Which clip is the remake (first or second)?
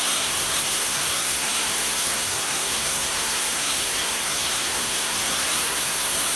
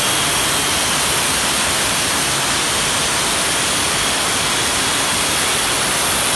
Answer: first